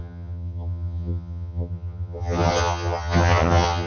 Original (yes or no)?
no